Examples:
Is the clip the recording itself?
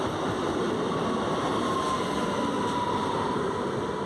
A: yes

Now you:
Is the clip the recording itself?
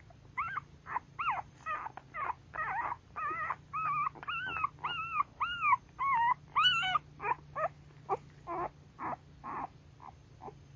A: yes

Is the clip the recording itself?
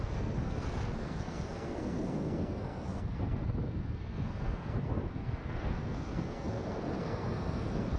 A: no